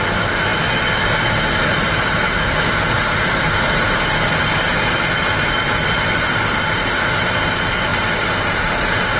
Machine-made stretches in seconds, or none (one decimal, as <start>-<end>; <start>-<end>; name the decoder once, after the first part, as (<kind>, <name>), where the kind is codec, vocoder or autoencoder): none